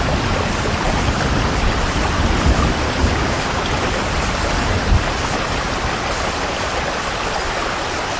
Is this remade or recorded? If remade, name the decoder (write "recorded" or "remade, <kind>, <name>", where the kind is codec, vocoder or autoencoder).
recorded